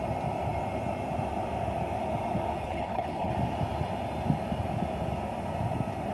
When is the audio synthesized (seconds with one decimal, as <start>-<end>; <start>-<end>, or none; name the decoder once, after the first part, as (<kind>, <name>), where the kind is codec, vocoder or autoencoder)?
2.6-3.3 (codec, HILCodec)